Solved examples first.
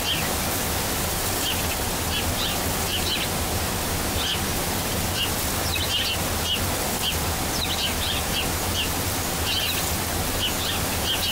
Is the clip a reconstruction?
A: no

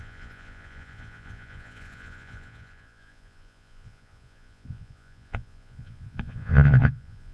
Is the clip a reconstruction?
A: yes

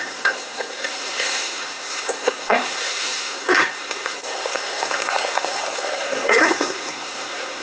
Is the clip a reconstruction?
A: yes